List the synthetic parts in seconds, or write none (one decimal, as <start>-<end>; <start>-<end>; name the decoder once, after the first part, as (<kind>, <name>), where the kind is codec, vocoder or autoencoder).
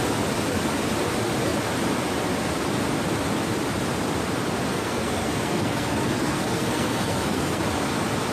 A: 4.7-7.6 (codec, SNAC)